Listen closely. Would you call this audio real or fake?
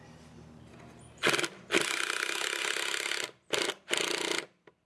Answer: real